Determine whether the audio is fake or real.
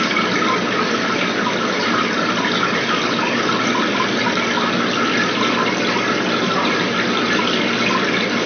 real